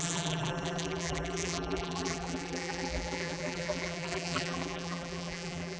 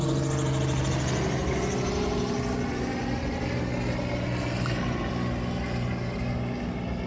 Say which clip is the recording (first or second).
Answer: second